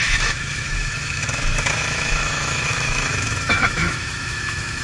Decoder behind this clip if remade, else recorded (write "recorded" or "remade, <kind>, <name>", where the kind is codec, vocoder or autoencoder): remade, autoencoder, DAC-VAE